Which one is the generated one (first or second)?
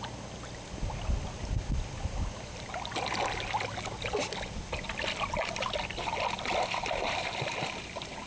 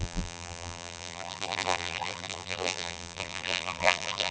second